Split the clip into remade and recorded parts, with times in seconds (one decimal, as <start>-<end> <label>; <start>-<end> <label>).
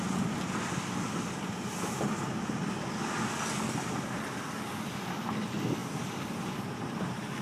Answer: 0.0-7.4 recorded